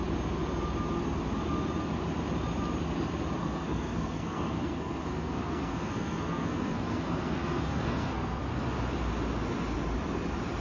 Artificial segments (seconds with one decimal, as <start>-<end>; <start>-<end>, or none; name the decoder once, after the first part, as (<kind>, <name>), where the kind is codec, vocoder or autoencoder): 3.4-8.4 (codec, SNAC)